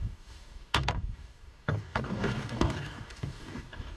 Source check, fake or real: fake